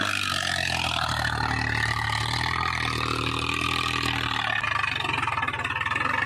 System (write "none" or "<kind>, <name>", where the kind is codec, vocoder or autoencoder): none